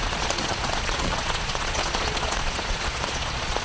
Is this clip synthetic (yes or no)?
yes